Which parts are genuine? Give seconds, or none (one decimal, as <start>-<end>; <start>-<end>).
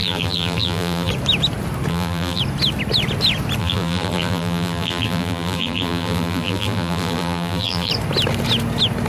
1.1-1.9; 2.4-3.6; 7.9-9.1